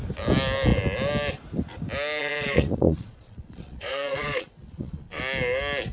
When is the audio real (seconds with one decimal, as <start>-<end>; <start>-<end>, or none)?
0.0-2.2; 5.2-5.9